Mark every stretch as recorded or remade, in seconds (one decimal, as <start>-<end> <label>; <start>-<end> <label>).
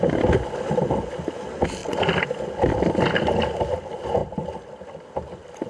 0.0-5.7 recorded